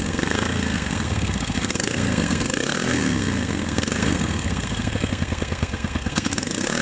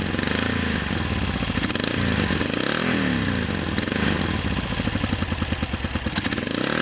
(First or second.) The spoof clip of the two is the first